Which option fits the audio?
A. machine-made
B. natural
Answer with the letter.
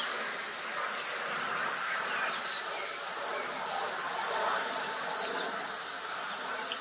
B